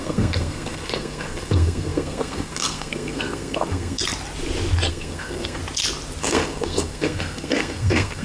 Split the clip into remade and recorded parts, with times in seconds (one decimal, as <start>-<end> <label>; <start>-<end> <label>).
0.0-4.0 remade; 4.0-4.9 recorded; 4.9-5.6 remade; 5.6-6.2 recorded; 6.2-8.2 remade